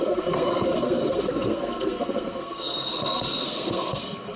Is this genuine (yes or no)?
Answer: no